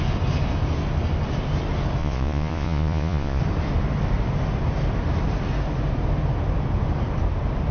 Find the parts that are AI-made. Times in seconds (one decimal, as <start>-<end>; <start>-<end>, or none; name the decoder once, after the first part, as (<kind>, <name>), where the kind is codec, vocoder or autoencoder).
2.0-3.4 (vocoder, Vocos)